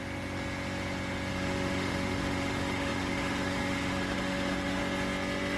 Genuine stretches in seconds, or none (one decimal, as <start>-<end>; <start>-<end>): 0.0-1.3; 4.8-5.6